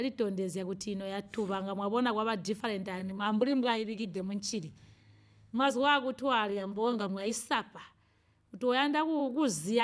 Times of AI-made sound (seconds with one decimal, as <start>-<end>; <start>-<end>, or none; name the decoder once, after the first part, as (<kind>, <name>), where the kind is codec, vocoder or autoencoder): 3.0-5.7 (codec, SNAC); 6.5-7.3